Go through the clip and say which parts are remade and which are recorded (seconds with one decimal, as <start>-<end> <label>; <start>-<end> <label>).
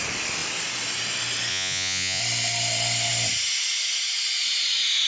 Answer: 0.0-1.5 recorded; 1.5-2.2 remade; 2.2-5.1 recorded